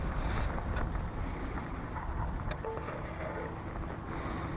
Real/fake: real